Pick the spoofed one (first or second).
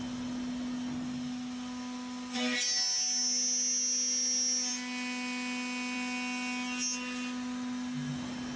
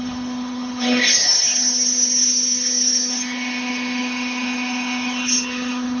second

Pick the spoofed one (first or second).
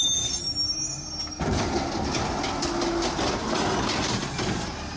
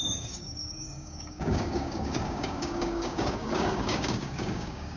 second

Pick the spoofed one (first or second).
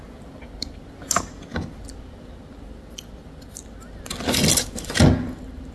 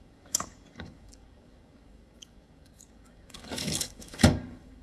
second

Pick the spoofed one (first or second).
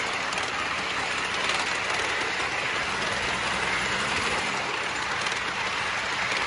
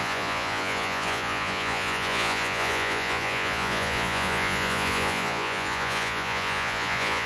second